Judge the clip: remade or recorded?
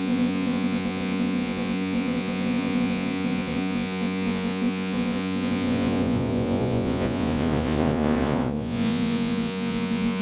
remade